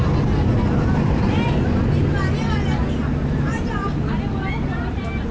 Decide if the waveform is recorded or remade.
recorded